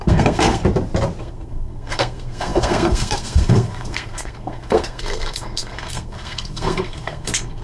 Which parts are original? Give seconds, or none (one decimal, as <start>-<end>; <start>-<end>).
0.6-1.2